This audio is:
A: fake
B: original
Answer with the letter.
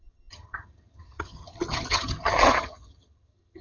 A